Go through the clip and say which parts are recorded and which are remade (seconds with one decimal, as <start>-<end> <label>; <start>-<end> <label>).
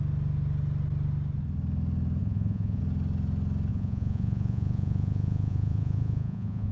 0.0-2.2 recorded; 2.2-2.8 remade; 2.8-3.7 recorded; 3.7-6.7 remade